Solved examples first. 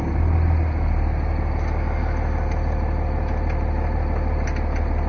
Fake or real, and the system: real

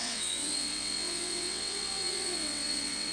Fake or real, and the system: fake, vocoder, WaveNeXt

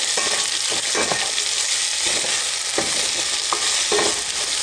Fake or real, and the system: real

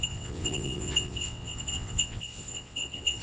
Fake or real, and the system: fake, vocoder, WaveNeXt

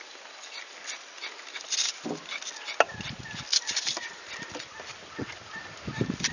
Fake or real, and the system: real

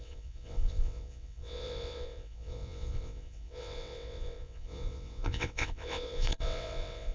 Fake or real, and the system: fake, vocoder, WaveNeXt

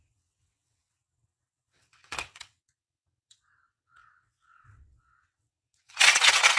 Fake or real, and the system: fake, vocoder, WaveNeXt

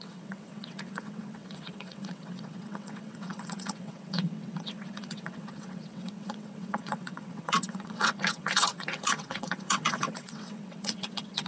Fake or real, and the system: fake, vocoder, WaveNeXt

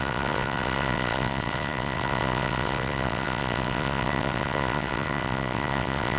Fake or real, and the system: fake, vocoder, WaveNeXt